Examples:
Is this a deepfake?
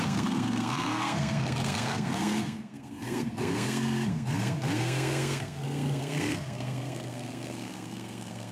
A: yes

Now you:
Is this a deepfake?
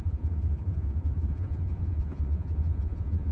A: yes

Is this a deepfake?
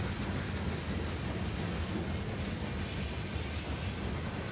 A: no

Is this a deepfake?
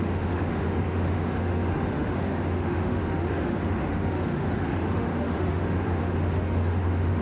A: yes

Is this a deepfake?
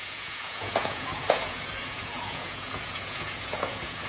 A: yes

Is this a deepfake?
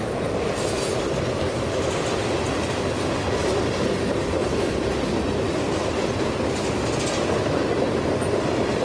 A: yes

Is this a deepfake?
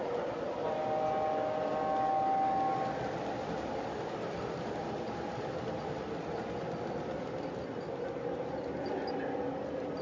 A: no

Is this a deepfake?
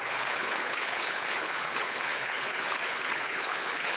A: yes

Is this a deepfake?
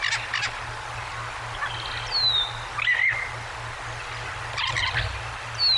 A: no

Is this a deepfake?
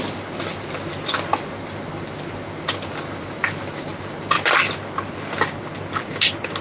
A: no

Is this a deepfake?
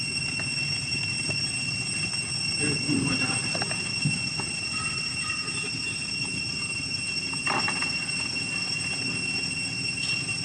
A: no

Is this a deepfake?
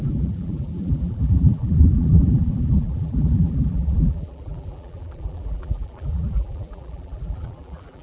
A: yes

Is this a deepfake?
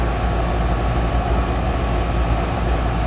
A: no